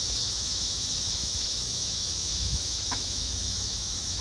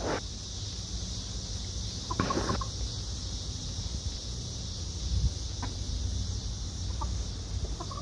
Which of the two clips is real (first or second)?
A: second